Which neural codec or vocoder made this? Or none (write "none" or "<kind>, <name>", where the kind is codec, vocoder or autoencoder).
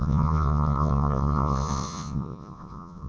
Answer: vocoder, Vocos